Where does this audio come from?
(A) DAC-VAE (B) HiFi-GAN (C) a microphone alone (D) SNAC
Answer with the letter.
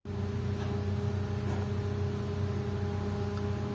C